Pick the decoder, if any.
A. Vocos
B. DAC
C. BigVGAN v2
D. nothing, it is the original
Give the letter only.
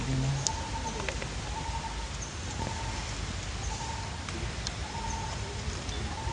D